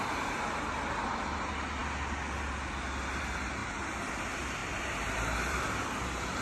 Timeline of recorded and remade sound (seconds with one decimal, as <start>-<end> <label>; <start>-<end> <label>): 0.0-3.6 recorded; 3.6-4.1 remade; 4.1-4.6 recorded; 4.6-6.4 remade